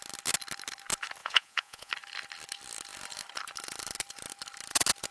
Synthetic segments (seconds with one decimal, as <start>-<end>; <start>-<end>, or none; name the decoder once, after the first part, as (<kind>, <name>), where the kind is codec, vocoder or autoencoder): 1.2-1.9 (vocoder, Vocos)